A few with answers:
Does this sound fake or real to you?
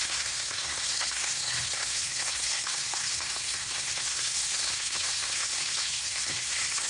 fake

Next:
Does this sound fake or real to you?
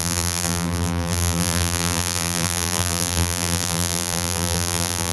fake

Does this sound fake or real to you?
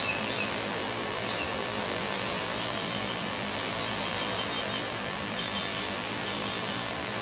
fake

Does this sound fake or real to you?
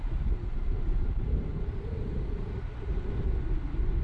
real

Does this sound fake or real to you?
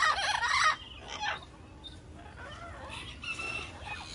real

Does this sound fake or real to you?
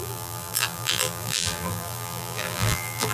fake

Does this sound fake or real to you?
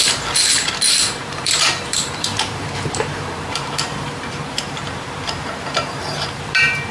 fake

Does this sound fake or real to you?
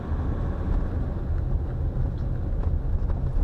real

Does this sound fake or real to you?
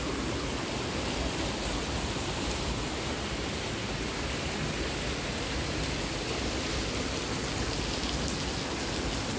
real